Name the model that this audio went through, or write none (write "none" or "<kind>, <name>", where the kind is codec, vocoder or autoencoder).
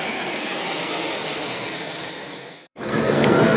codec, SNAC